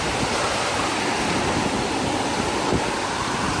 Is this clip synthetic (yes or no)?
no